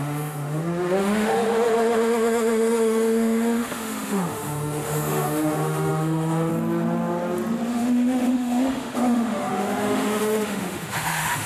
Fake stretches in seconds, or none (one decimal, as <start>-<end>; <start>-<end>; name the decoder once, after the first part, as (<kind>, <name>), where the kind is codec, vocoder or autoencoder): 0.0-6.5 (autoencoder, DAC-VAE); 7.7-11.5